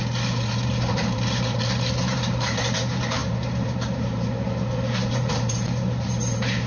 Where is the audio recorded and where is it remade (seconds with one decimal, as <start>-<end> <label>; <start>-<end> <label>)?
0.0-6.7 remade